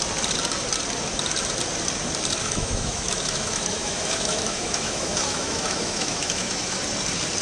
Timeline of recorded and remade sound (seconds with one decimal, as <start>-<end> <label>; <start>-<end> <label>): 0.0-2.4 recorded; 2.4-6.8 remade; 6.8-7.4 recorded